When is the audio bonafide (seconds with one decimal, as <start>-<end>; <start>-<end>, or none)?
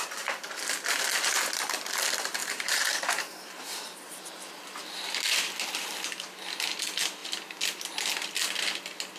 0.0-2.4; 4.5-9.2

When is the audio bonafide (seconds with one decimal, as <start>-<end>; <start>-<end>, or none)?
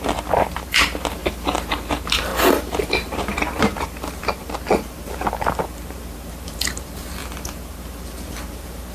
1.2-1.7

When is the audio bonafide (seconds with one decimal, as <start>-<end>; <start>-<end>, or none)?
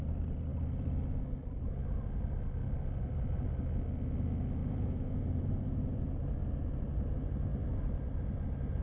0.0-4.6; 5.8-8.8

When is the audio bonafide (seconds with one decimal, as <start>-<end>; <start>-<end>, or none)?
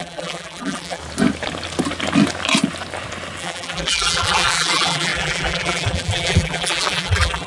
1.0-3.4